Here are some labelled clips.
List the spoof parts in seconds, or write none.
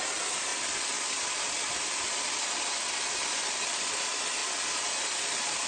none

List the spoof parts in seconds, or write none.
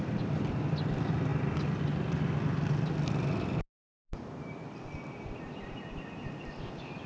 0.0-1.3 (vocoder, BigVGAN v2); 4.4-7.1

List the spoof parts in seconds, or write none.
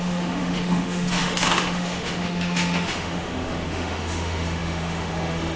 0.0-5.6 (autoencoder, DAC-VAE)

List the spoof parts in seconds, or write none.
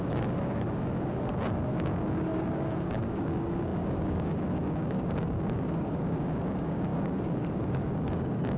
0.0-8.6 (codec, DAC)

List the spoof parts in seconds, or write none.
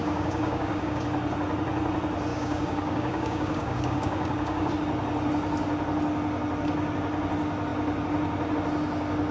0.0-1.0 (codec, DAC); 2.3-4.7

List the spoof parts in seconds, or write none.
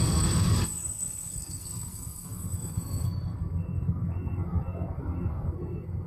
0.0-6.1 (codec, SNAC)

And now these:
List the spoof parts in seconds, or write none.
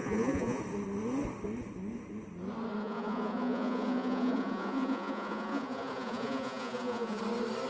0.0-0.6 (vocoder, Vocos); 2.8-7.2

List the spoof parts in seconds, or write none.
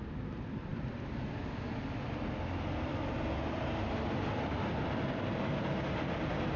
none